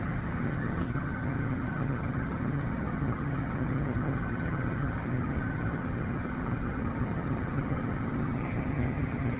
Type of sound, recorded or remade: remade